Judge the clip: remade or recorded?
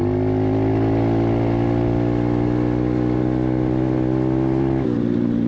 recorded